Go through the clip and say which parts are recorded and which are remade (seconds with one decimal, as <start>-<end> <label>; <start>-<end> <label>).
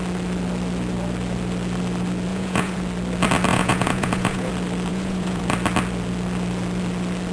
0.0-2.3 recorded; 2.3-2.8 remade; 2.8-3.5 recorded; 3.5-4.5 remade; 4.5-4.9 recorded; 4.9-5.4 remade; 5.4-7.3 recorded